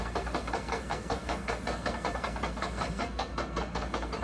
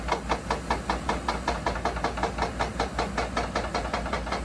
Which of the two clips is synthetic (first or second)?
first